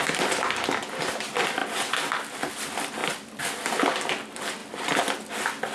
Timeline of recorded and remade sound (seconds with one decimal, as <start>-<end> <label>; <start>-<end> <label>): 0.0-5.7 recorded

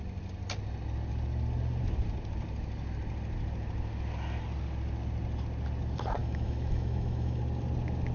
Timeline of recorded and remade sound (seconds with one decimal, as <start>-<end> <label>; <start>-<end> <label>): 0.0-6.2 recorded; 6.2-7.4 remade; 7.4-8.1 recorded

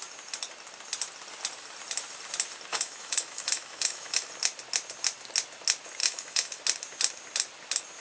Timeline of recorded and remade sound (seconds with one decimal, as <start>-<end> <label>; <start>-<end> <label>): 0.0-2.7 recorded; 2.7-4.3 remade; 4.3-6.0 recorded; 6.0-6.6 remade; 6.6-8.0 recorded